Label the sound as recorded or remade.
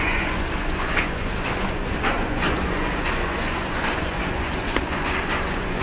remade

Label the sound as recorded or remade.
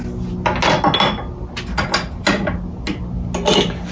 recorded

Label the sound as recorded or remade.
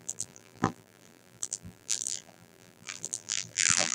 remade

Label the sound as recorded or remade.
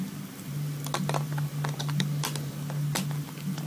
recorded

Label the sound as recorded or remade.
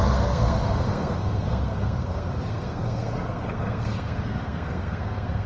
remade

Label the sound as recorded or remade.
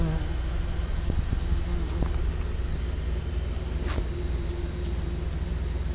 recorded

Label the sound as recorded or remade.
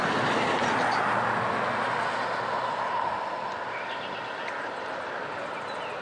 recorded